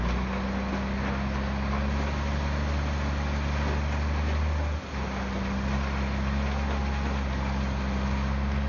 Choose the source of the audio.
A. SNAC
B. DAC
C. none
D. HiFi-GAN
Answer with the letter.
C